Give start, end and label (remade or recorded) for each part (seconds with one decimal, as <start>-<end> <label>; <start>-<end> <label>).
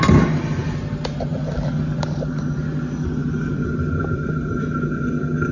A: 0.0-0.6 recorded; 0.6-1.4 remade; 1.4-5.5 recorded